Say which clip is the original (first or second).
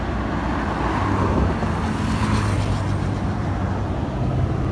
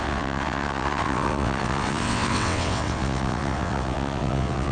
first